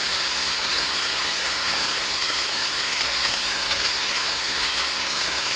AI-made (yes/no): yes